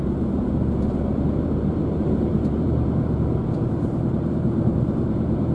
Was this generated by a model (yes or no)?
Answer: yes